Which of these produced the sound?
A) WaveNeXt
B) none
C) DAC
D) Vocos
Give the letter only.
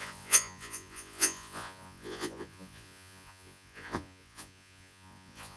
D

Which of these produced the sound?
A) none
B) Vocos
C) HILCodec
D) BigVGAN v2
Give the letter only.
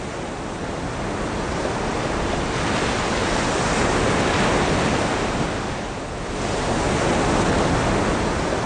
A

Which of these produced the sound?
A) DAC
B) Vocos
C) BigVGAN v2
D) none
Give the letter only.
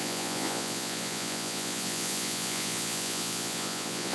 B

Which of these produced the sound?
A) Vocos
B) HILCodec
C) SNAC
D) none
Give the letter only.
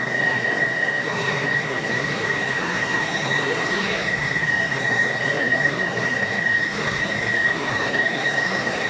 C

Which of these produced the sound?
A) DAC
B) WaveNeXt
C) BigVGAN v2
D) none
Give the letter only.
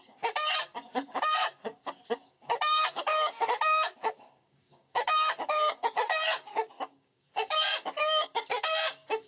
A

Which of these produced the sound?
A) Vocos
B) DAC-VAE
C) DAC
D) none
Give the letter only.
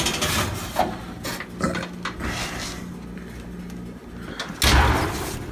D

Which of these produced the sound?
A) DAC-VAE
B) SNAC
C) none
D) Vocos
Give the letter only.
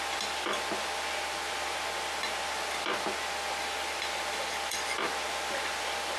C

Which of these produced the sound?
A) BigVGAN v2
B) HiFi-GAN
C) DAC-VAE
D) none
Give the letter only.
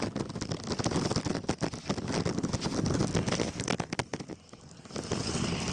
D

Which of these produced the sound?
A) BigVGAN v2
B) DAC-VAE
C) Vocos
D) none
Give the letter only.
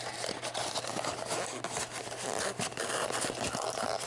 D